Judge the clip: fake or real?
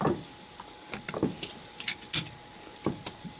real